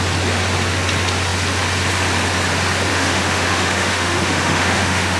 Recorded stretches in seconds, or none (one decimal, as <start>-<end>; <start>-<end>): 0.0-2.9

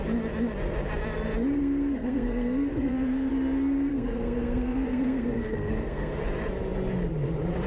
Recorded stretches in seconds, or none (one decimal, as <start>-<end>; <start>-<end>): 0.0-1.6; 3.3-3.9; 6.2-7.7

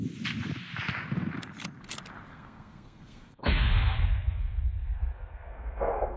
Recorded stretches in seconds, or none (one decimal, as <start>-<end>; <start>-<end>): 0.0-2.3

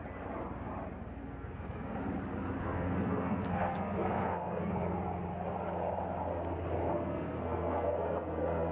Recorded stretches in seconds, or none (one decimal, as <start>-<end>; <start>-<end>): 0.0-1.2; 2.0-2.6; 4.7-6.9

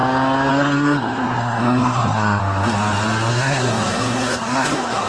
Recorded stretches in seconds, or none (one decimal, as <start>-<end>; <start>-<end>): 0.0-0.5; 2.4-3.3

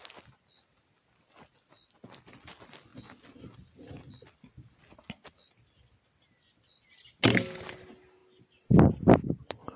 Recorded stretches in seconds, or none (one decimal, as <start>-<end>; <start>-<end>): 0.0-9.8